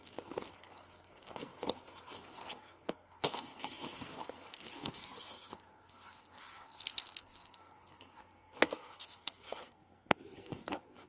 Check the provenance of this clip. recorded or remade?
remade